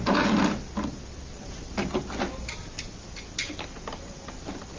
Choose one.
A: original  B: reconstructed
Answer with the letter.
A